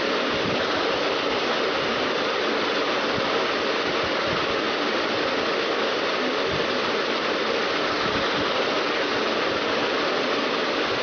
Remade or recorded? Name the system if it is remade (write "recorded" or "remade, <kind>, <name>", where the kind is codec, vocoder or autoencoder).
recorded